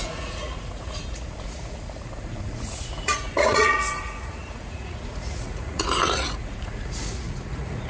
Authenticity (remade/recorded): remade